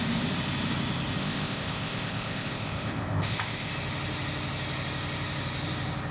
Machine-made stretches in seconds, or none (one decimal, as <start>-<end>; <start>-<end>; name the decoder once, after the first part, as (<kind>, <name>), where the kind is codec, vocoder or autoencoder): 1.2-3.7 (codec, ZipCodec)